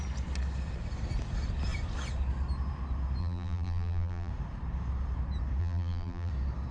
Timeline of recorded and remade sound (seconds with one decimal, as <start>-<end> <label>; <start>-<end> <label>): 0.0-3.2 recorded; 3.2-4.3 remade; 4.3-5.6 recorded; 5.6-6.3 remade; 6.3-6.7 recorded